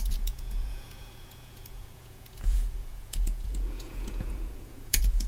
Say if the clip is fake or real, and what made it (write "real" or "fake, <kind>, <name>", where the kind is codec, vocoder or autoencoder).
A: fake, vocoder, Vocos